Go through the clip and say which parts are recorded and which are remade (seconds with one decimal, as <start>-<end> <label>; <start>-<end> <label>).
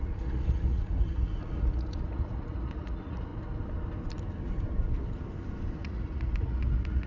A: 0.0-3.3 remade; 3.3-5.8 recorded; 5.8-7.1 remade